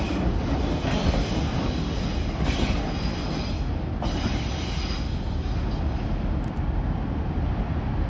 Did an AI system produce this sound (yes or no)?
no